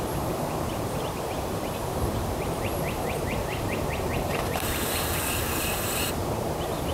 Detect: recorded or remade remade